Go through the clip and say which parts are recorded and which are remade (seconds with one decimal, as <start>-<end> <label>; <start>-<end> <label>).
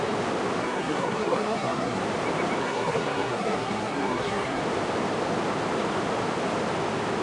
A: 0.0-0.6 recorded; 0.6-2.0 remade; 2.0-2.6 recorded; 2.6-4.6 remade; 4.6-7.2 recorded